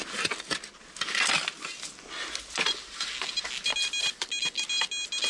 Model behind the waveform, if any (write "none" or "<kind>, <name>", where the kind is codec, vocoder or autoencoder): none